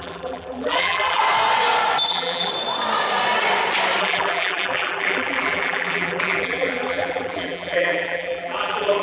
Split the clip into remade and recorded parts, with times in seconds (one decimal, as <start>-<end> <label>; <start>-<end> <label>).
0.0-1.2 remade; 1.2-2.1 recorded; 2.1-2.5 remade; 2.5-4.0 recorded; 4.0-9.0 remade